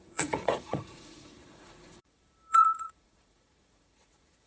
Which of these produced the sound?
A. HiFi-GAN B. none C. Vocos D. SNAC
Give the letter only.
C